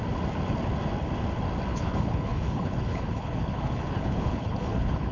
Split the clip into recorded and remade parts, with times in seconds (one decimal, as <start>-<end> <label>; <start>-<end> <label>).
0.0-1.7 recorded; 1.7-5.1 remade